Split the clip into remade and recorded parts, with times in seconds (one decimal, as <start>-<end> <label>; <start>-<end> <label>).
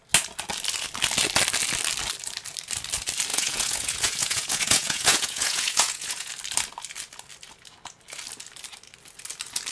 0.0-3.3 recorded; 3.3-6.3 remade; 6.3-9.7 recorded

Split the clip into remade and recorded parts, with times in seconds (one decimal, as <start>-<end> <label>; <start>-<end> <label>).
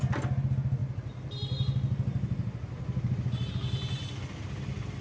0.0-5.0 recorded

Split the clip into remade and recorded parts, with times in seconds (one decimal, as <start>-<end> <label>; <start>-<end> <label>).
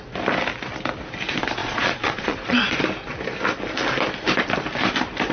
0.0-1.6 recorded; 1.6-2.6 remade; 2.6-5.3 recorded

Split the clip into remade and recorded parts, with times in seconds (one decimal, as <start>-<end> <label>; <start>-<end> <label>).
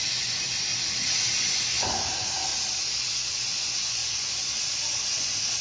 0.0-0.7 remade; 0.7-1.4 recorded; 1.4-2.5 remade; 2.5-3.1 recorded; 3.1-5.6 remade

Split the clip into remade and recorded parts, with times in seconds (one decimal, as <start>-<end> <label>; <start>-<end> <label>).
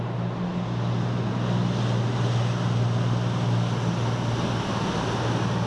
0.0-5.7 recorded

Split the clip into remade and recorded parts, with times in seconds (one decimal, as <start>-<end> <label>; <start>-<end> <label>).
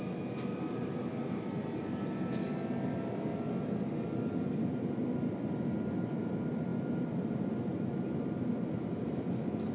0.0-9.7 recorded